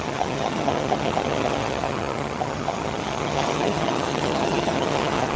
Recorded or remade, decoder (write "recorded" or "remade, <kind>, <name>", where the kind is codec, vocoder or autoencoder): remade, vocoder, HiFi-GAN